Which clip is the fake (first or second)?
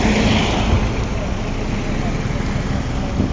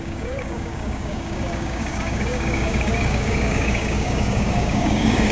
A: second